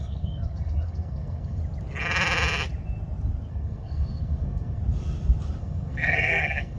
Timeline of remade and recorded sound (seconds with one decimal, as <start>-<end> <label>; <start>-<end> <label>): 0.0-1.6 remade; 1.6-3.5 recorded; 3.5-4.8 remade; 4.8-5.6 recorded; 5.6-6.8 remade